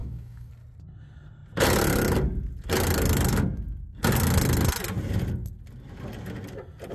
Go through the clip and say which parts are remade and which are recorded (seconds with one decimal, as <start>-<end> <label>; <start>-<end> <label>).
0.0-0.5 remade; 0.5-6.9 recorded